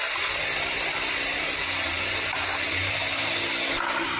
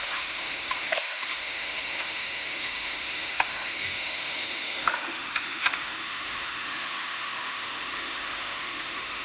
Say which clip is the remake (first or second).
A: second